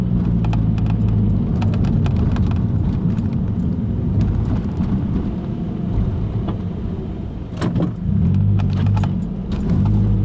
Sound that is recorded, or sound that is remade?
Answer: recorded